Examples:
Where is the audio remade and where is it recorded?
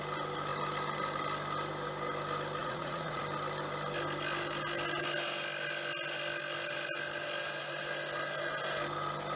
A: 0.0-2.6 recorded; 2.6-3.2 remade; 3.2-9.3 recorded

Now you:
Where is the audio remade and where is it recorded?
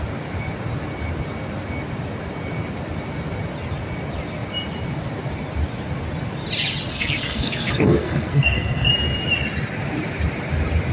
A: 0.0-6.9 recorded; 6.9-8.9 remade; 8.9-10.9 recorded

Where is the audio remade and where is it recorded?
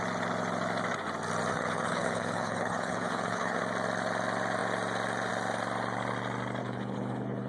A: 0.0-1.5 recorded; 1.5-3.6 remade; 3.6-6.6 recorded; 6.6-7.5 remade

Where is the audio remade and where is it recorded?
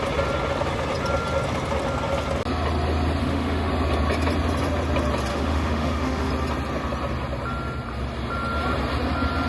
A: 0.0-3.2 recorded; 3.2-3.7 remade; 3.7-5.3 recorded; 5.3-6.3 remade; 6.3-9.5 recorded